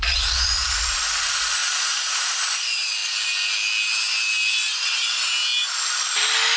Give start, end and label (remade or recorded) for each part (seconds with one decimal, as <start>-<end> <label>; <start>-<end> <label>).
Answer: 0.0-1.6 recorded; 1.6-2.4 remade; 2.4-6.6 recorded

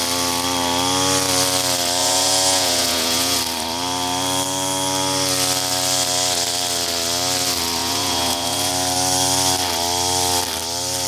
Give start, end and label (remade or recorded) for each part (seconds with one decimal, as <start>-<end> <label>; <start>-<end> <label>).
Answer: 0.0-2.0 recorded; 2.0-3.4 remade; 3.4-7.8 recorded; 7.8-8.7 remade; 8.7-11.1 recorded

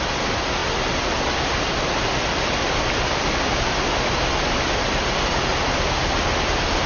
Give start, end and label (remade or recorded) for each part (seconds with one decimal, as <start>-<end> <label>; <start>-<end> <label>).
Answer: 0.0-6.9 recorded

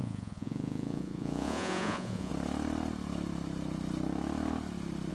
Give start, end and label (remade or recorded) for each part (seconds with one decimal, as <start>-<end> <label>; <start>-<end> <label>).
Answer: 0.0-2.3 remade; 2.3-5.1 recorded

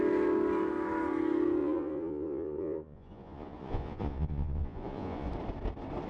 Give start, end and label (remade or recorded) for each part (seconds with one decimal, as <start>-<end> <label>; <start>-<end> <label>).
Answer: 0.0-1.6 recorded; 1.6-5.3 remade; 5.3-6.1 recorded

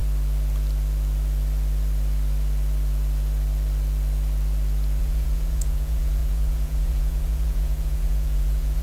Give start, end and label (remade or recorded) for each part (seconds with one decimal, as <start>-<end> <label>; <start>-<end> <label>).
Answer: 0.0-5.0 recorded; 5.0-8.8 remade

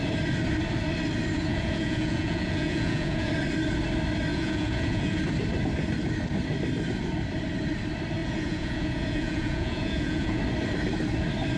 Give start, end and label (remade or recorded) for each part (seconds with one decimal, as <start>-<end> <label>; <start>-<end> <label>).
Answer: 0.0-1.5 recorded; 1.5-3.3 remade; 3.3-4.3 recorded; 4.3-5.2 remade; 5.2-8.2 recorded; 8.2-10.4 remade; 10.4-11.6 recorded

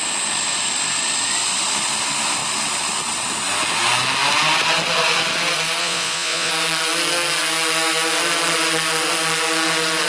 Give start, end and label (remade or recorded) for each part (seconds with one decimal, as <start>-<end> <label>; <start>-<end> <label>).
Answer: 0.0-5.8 recorded; 5.8-6.5 remade; 6.5-10.1 recorded